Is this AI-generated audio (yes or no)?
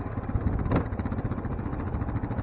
no